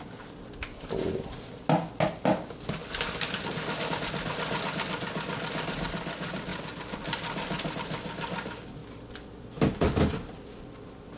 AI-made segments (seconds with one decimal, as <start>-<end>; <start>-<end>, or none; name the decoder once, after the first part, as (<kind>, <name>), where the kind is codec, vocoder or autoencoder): none